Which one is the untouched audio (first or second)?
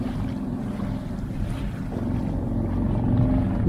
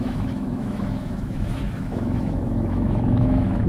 first